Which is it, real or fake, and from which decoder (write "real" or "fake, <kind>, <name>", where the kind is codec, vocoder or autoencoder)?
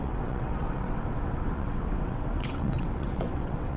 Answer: fake, vocoder, WaveNeXt